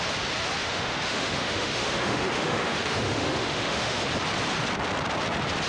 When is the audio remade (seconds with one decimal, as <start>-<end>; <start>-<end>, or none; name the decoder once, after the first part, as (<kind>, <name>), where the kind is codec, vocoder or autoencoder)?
0.6-4.0 (autoencoder, DAC-VAE)